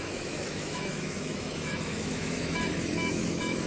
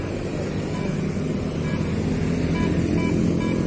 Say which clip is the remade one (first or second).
first